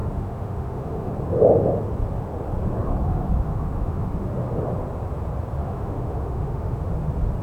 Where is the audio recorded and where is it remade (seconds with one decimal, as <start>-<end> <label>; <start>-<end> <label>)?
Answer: 0.0-1.1 remade; 1.1-3.0 recorded; 3.0-4.1 remade; 4.1-5.6 recorded; 5.6-6.9 remade; 6.9-7.4 recorded